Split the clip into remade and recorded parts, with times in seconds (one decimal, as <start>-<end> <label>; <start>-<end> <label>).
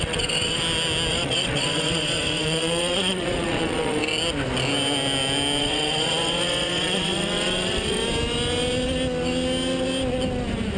0.0-0.6 remade; 0.6-1.1 recorded; 1.1-4.0 remade; 4.0-5.6 recorded; 5.6-8.0 remade; 8.0-10.8 recorded